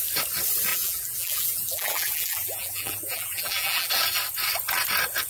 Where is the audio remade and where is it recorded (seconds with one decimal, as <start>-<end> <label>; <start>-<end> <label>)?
0.0-0.7 recorded; 0.7-3.9 remade; 3.9-5.3 recorded